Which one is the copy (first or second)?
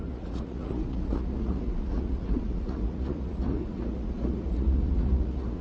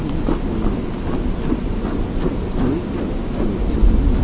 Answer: first